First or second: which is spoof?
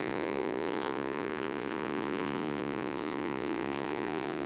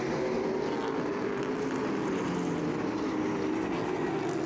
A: first